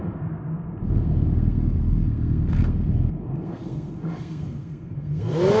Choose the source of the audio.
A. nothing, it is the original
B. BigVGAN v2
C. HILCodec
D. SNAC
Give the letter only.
D